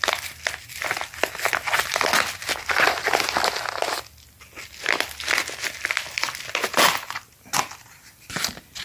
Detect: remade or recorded recorded